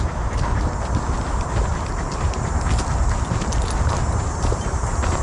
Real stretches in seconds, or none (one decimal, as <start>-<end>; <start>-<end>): 0.0-1.7; 2.6-5.2

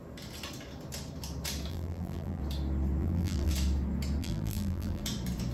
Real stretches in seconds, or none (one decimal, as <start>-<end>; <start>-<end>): 0.0-1.7; 2.4-3.0; 3.5-4.2; 5.0-5.5

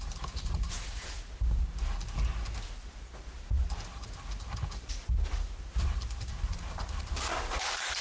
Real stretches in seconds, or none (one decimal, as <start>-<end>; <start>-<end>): 0.9-5.7

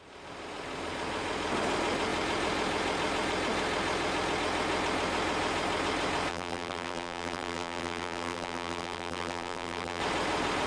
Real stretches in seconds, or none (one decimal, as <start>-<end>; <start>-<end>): 0.0-6.3; 10.0-10.7

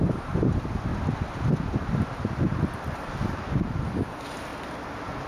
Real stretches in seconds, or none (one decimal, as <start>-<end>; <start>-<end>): 0.9-2.4; 4.5-5.3

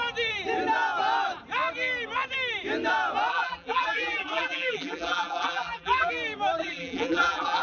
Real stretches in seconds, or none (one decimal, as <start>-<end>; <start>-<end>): 0.0-3.3; 6.1-6.6

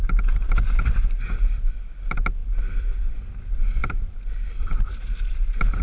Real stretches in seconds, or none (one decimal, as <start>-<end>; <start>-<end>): none

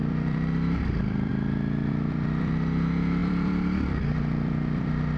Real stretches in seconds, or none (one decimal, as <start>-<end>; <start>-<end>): 1.3-1.9